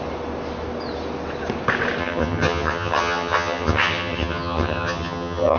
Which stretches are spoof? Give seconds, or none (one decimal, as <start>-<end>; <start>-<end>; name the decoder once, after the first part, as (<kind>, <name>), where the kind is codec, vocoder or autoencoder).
2.0-5.6 (vocoder, HiFi-GAN)